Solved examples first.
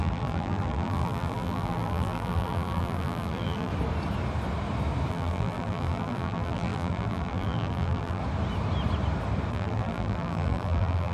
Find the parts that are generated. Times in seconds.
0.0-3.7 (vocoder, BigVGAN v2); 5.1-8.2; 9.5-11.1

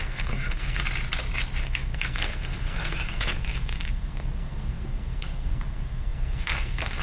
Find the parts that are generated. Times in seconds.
0.0-0.8 (codec, SNAC); 1.6-7.0

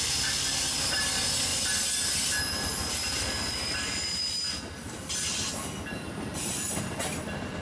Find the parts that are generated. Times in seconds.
1.5-2.3 (vocoder, BigVGAN v2); 6.3-7.0

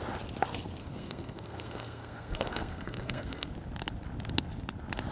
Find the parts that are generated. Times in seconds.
0.8-3.5 (codec, SNAC)

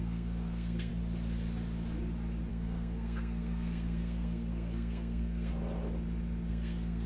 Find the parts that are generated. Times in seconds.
0.0-0.9 (codec, SNAC); 2.5-5.5; 6.5-7.1

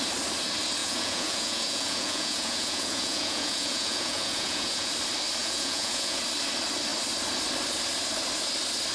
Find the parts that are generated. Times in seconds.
0.8-4.9 (vocoder, Vocos); 5.4-6.2

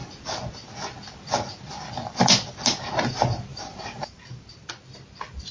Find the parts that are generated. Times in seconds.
3.5-4.7 (vocoder, BigVGAN v2)

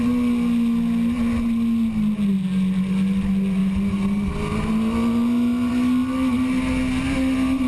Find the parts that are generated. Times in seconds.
none